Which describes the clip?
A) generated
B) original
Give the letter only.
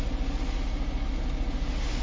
B